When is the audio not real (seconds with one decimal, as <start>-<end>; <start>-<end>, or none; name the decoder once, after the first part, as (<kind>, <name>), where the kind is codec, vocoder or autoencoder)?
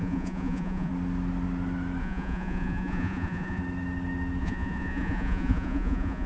0.0-0.9 (vocoder, Vocos); 2.0-3.6; 4.4-6.3